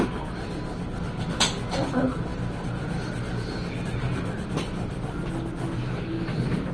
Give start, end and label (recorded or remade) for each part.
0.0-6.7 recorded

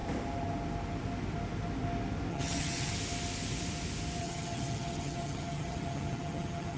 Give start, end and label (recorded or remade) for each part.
0.0-2.3 recorded; 2.3-2.9 remade; 2.9-4.2 recorded; 4.2-6.8 remade

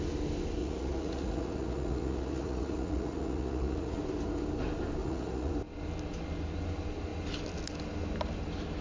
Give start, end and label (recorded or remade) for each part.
0.0-0.6 recorded; 0.6-4.0 remade; 4.0-5.0 recorded; 5.0-5.5 remade; 5.5-8.8 recorded

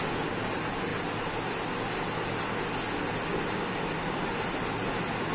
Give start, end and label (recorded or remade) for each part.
0.0-5.3 recorded

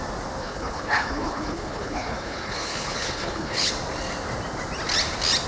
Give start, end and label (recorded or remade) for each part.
0.0-0.4 recorded; 0.4-3.7 remade; 3.7-5.5 recorded

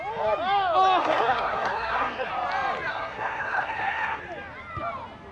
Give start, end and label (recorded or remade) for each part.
0.0-1.0 recorded; 1.0-2.3 remade; 2.3-2.9 recorded; 2.9-4.2 remade; 4.2-5.3 recorded

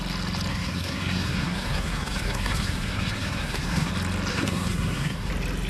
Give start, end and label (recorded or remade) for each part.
0.0-0.5 recorded; 0.5-3.9 remade; 3.9-4.3 recorded; 4.3-5.3 remade; 5.3-5.7 recorded